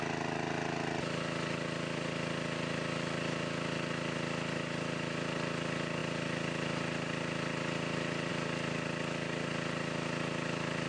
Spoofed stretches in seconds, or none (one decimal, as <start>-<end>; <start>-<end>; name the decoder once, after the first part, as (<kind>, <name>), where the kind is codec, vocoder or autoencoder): none